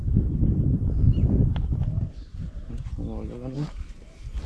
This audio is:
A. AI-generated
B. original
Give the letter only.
B